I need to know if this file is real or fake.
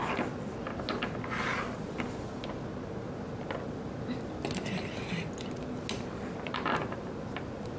real